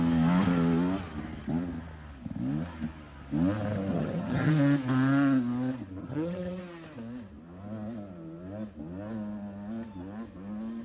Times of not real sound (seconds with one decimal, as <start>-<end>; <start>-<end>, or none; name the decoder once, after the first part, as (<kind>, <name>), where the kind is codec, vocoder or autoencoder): 3.9-4.5 (vocoder, HiFi-GAN); 6.0-6.6